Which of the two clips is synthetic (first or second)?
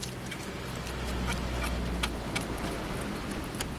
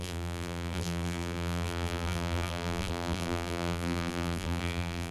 second